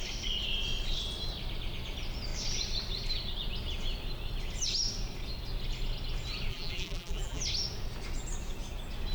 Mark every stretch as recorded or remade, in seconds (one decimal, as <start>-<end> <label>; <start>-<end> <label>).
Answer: 0.0-6.5 recorded; 6.5-7.4 remade; 7.4-9.1 recorded